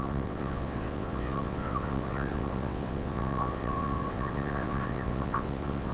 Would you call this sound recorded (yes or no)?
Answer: no